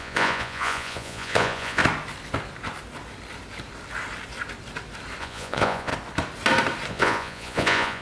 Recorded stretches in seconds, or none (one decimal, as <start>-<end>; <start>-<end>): 1.8-5.2; 5.9-6.9